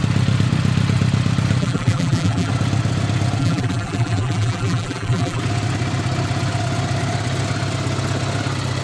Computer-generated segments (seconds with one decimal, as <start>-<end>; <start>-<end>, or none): 1.6-2.5; 3.4-5.4